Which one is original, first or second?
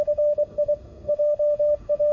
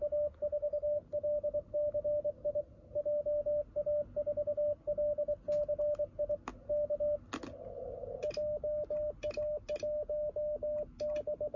second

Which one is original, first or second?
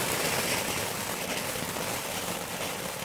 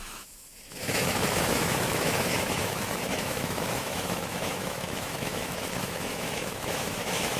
first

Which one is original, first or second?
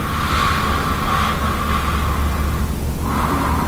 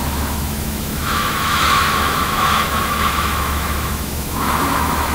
first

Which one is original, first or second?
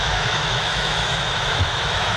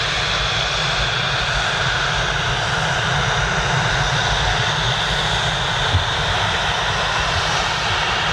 second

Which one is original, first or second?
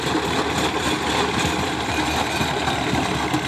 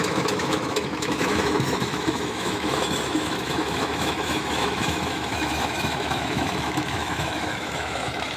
first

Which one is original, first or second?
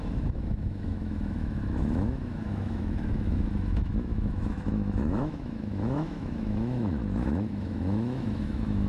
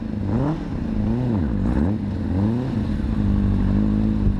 second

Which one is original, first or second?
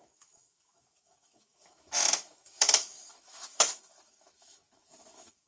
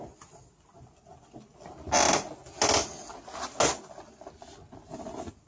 second